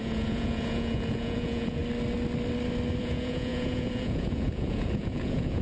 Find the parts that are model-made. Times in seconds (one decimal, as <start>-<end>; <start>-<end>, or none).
0.0-1.8; 3.0-5.6